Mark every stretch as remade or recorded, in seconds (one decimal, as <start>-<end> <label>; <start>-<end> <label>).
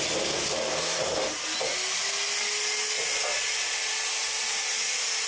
0.0-5.3 recorded